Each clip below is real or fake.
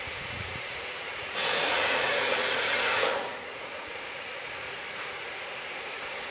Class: fake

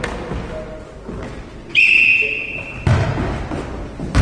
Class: real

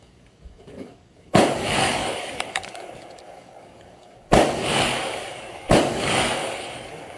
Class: fake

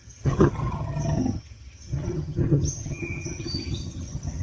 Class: fake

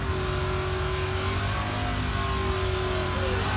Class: real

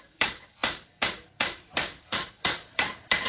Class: fake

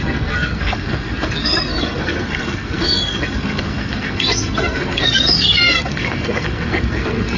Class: fake